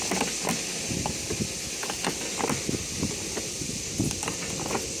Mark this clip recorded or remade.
recorded